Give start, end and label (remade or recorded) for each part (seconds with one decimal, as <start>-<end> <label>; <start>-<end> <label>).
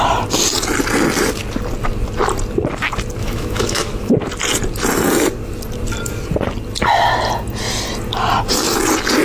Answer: 0.0-3.2 recorded; 3.2-4.1 remade; 4.1-9.2 recorded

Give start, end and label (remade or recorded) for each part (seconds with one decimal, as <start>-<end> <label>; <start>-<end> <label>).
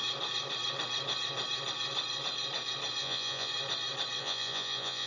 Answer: 0.0-3.0 recorded; 3.0-3.5 remade; 3.5-4.2 recorded; 4.2-5.1 remade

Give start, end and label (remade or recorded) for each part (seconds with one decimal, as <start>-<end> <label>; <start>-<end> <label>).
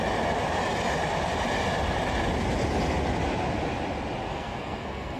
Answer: 0.0-4.3 recorded; 4.3-5.2 remade